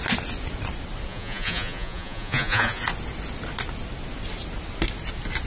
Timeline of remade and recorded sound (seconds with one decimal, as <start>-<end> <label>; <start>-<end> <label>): 0.0-1.1 recorded; 1.1-2.8 remade; 2.8-5.5 recorded